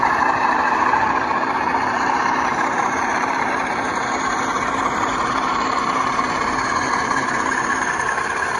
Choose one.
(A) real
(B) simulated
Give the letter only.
B